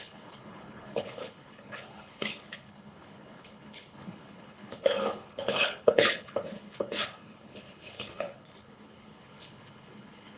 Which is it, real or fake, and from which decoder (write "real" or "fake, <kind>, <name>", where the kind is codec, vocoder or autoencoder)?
fake, codec, HILCodec